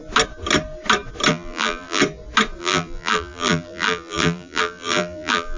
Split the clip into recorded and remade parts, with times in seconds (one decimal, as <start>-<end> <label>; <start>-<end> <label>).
0.0-1.3 recorded; 1.3-2.0 remade; 2.0-2.6 recorded; 2.6-5.6 remade